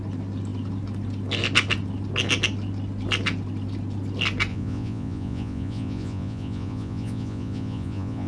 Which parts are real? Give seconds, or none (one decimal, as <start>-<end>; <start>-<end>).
0.0-4.5